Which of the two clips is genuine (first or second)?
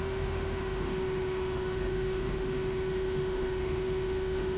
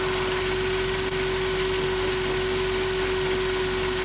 second